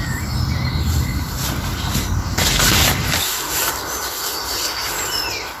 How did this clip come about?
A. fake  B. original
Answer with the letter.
B